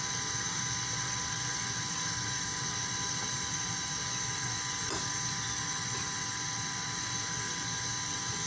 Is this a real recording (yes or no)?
yes